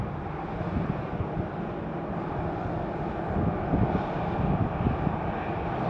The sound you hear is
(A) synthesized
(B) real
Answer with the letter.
B